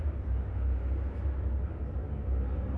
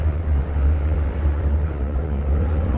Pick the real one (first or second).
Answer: first